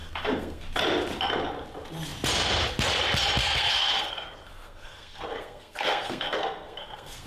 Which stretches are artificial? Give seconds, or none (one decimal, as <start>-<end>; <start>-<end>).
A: 0.0-0.6; 3.4-7.3